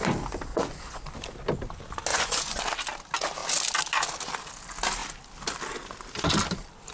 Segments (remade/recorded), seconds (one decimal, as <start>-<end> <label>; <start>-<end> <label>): 0.0-0.5 recorded; 0.5-1.0 remade; 1.0-2.1 recorded; 2.1-2.6 remade; 2.6-6.9 recorded